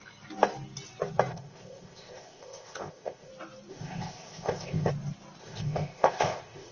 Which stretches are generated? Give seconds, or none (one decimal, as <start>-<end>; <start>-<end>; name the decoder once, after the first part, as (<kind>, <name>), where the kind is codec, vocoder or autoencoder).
1.3-3.3 (codec, ZipCodec); 3.7-4.9; 5.4-6.7